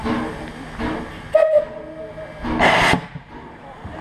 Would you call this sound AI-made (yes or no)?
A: no